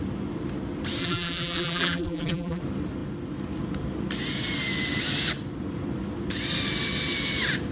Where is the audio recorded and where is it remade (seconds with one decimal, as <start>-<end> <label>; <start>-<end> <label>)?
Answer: 0.0-1.0 recorded; 1.0-2.6 remade; 2.6-7.7 recorded